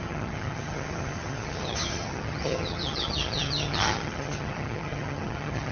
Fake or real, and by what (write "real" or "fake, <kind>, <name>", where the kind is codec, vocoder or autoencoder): fake, vocoder, HiFi-GAN